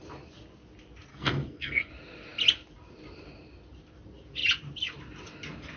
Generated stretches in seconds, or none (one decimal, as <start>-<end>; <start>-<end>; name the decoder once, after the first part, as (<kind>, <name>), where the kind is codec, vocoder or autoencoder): 1.1-1.9 (codec, SNAC)